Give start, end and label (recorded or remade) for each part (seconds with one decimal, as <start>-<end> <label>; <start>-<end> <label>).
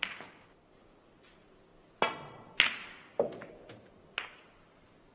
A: 0.0-5.1 recorded